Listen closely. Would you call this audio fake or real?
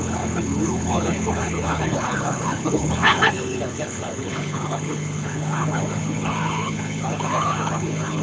fake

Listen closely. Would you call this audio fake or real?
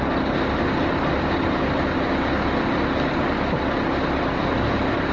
real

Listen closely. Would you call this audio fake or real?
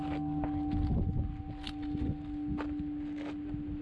real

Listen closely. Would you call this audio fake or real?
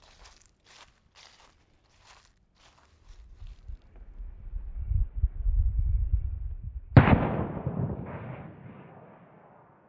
real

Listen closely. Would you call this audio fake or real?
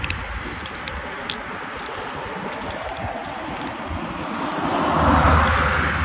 real